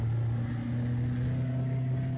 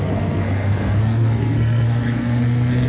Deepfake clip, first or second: second